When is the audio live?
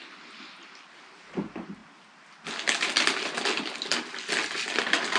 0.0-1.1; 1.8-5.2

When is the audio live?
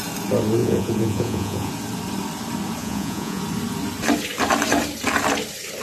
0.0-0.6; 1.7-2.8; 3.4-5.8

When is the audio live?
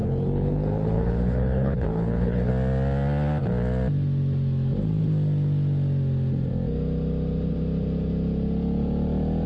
2.5-9.5